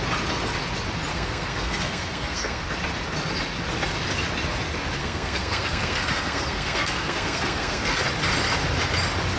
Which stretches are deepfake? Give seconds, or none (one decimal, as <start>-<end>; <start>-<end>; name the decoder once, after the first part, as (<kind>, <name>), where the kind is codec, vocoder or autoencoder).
1.1-2.6 (codec, SNAC); 5.0-8.0